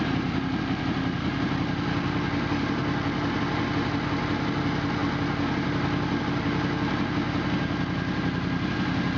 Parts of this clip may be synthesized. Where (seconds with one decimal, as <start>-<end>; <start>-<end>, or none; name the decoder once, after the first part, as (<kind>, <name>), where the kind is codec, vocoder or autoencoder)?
none